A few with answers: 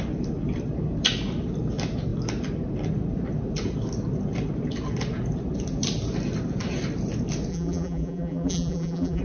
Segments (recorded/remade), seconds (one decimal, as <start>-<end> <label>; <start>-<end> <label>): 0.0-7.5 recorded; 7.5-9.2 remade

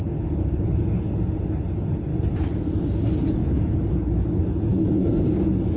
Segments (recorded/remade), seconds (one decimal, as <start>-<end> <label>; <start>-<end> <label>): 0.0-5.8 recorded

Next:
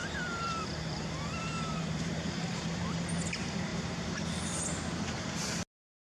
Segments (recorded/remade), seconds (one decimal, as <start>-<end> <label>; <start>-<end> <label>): 0.0-2.8 remade; 2.8-3.7 recorded; 3.7-4.4 remade; 4.4-6.1 recorded